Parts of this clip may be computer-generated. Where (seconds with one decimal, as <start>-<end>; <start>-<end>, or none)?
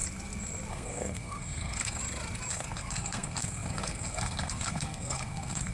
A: 0.7-2.0; 2.5-5.7